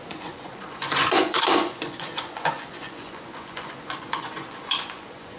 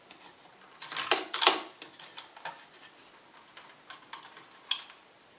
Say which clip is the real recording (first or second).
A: second